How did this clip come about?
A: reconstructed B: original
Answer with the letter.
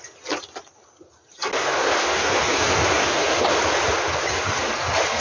B